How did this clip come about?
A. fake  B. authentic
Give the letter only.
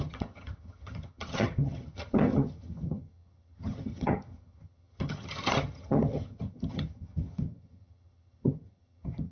A